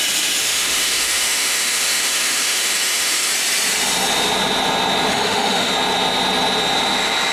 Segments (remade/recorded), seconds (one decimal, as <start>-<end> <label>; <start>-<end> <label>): 0.0-0.4 recorded; 0.4-3.3 remade; 3.3-5.1 recorded; 5.1-5.7 remade; 5.7-7.3 recorded